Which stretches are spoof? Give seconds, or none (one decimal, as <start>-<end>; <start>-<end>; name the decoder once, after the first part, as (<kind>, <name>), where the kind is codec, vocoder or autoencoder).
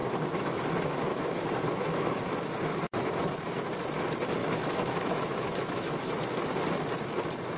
0.0-0.6 (autoencoder, DAC-VAE); 1.1-2.2; 2.7-3.3; 4.4-6.1